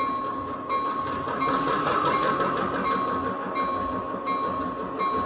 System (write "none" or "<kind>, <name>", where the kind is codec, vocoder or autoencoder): none